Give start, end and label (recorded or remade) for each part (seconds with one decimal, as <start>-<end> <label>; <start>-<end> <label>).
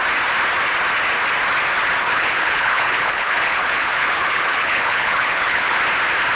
0.0-2.0 recorded; 2.0-5.8 remade; 5.8-6.4 recorded